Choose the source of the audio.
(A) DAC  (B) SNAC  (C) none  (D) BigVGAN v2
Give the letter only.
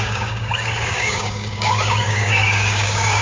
A